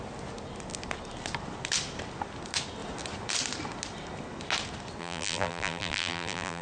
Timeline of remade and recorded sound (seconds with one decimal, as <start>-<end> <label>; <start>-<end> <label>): 0.0-5.0 recorded; 5.0-6.6 remade